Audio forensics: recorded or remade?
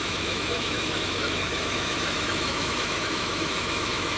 remade